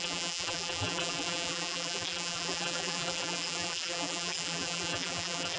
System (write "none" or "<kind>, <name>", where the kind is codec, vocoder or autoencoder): vocoder, BigVGAN v2